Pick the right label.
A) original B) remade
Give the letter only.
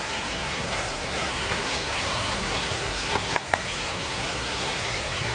B